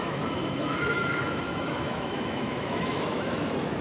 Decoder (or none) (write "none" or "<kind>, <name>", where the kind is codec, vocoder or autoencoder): autoencoder, DAC-VAE